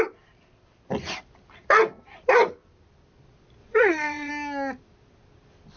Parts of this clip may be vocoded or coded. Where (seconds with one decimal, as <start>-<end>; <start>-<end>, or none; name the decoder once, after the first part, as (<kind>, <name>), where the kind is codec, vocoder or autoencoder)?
3.6-4.3 (vocoder, WaveNeXt)